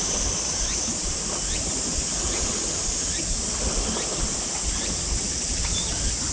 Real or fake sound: real